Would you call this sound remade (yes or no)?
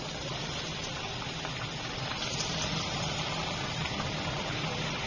no